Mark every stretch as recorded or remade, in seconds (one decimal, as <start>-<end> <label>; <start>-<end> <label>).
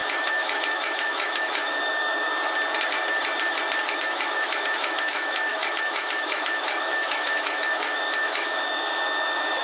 0.0-2.3 remade; 2.3-3.9 recorded; 3.9-9.6 remade